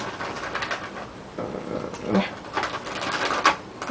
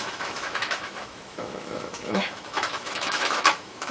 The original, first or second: first